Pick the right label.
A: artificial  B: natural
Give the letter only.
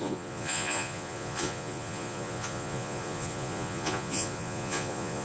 A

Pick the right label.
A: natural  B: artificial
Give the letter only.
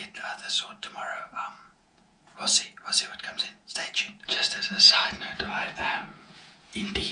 B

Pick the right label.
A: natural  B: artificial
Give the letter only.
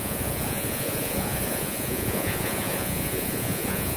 B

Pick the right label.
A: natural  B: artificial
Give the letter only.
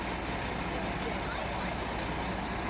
A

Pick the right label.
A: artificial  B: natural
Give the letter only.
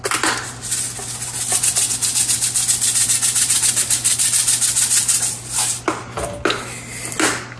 B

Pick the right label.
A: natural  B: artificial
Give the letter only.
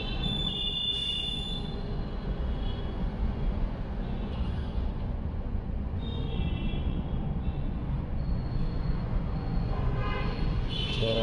B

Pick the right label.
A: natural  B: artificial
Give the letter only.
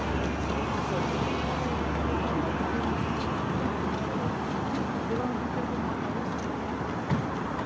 A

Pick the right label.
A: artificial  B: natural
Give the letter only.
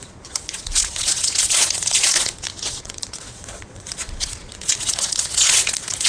A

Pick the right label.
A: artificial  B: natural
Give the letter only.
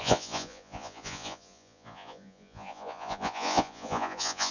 A